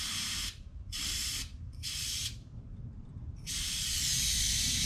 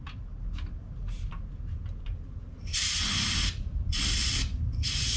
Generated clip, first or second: first